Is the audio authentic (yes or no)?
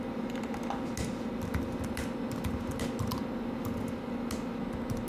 yes